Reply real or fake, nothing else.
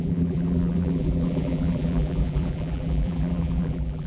fake